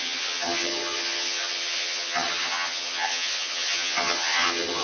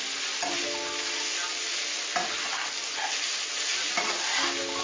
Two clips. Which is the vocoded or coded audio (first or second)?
first